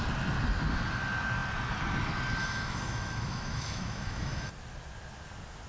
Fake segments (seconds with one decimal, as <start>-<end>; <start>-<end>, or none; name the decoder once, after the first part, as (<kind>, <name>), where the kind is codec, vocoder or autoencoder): 2.4-4.5 (autoencoder, DAC-VAE)

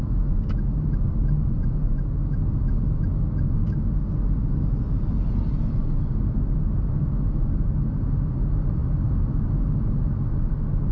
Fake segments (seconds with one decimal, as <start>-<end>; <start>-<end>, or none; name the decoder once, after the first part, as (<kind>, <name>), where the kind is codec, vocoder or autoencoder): none

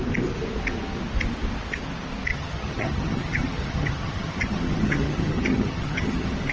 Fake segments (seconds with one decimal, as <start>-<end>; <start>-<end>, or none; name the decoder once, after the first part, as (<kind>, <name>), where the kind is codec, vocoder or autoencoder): 2.3-6.5 (vocoder, HiFi-GAN)

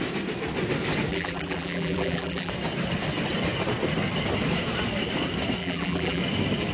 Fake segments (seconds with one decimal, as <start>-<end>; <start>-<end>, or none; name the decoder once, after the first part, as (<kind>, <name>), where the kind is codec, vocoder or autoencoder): 1.1-2.5 (vocoder, BigVGAN v2); 5.6-6.2

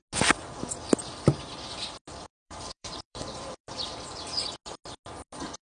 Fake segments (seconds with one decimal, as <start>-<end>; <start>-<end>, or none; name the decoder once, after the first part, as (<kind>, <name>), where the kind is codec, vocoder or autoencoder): 2.4-4.4 (vocoder, BigVGAN v2)

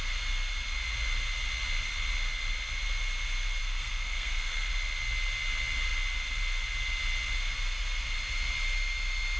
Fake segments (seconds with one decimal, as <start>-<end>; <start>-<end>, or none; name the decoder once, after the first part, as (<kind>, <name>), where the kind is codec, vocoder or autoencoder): 3.6-4.7 (codec, SNAC)

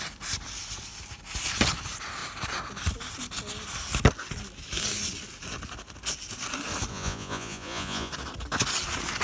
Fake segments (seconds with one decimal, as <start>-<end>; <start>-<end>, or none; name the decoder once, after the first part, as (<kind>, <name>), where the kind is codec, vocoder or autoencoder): 6.9-8.1 (vocoder, Vocos)